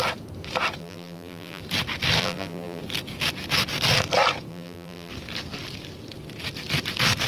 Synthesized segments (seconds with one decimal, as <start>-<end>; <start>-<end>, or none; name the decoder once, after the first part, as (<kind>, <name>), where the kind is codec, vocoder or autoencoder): 0.8-1.6 (vocoder, BigVGAN v2); 2.2-2.8; 4.5-5.1